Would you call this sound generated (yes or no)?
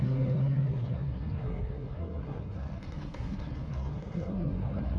yes